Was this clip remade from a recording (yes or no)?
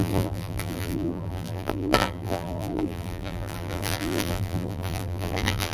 yes